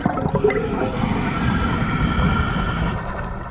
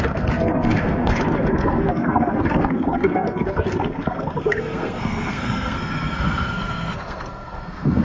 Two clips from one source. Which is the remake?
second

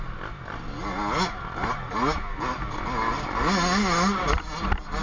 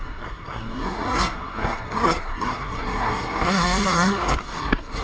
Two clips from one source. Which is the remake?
second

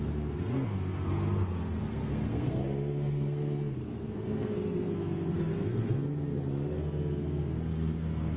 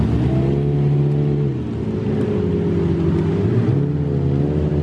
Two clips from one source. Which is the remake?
first